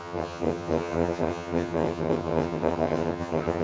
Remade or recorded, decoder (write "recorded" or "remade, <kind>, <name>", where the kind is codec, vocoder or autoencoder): remade, vocoder, HiFi-GAN